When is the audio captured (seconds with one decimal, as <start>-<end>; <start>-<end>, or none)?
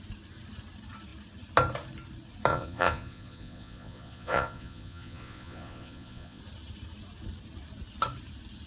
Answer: 0.0-2.5; 6.4-8.7